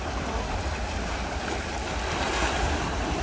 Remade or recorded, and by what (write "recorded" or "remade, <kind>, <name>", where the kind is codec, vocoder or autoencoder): remade, vocoder, BigVGAN v2